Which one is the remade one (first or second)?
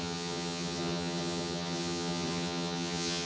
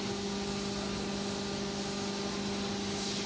first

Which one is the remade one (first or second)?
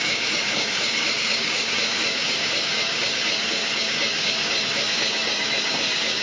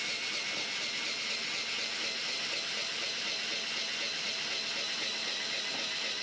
first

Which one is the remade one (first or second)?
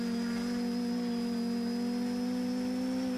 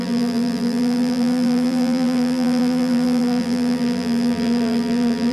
second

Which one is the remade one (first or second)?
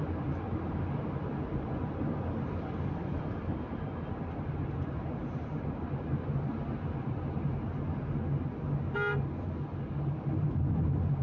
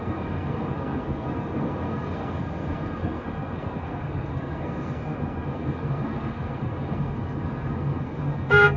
second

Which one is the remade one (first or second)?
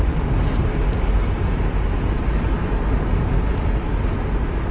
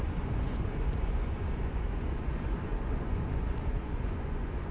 second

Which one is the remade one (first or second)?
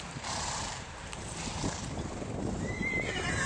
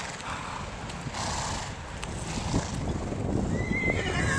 first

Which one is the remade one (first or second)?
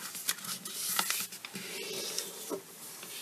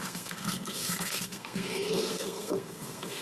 second